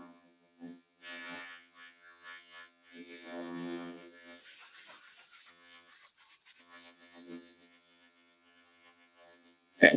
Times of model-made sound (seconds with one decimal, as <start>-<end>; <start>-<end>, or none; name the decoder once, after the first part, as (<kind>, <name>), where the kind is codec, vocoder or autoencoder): 0.0-4.4 (vocoder, HiFi-GAN); 5.5-5.9; 6.6-10.0

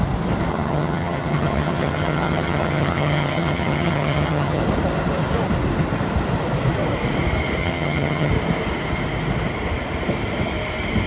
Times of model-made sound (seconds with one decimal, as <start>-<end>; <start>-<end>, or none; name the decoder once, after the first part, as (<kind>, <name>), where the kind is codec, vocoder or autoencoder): 0.5-4.6 (vocoder, HiFi-GAN); 7.6-8.3

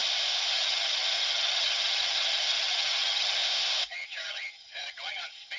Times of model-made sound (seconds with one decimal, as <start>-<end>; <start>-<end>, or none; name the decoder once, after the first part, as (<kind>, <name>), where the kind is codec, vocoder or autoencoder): 0.5-3.4 (vocoder, HiFi-GAN); 3.9-5.6

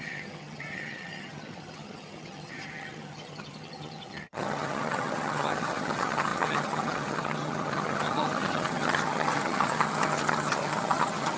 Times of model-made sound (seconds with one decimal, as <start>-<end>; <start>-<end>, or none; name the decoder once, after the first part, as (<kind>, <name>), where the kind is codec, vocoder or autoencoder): 0.0-11.4 (vocoder, HiFi-GAN)

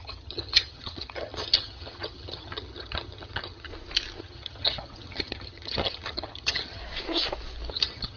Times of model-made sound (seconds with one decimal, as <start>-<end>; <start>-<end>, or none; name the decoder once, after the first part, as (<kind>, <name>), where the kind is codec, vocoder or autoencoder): 0.0-3.7 (vocoder, HiFi-GAN); 4.2-6.8; 7.7-8.2

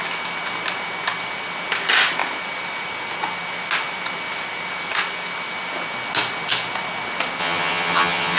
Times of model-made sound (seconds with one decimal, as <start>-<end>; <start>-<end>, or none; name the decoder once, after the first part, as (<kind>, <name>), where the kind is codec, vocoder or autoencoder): 7.4-8.4 (vocoder, HiFi-GAN)

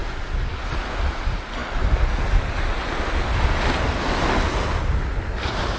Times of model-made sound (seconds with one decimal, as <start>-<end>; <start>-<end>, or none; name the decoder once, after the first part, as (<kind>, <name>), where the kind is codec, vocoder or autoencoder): none